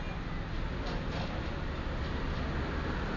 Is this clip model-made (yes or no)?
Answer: no